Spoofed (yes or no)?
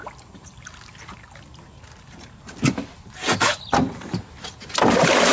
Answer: no